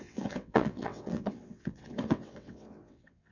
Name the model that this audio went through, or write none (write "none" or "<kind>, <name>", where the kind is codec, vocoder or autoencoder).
vocoder, WaveNeXt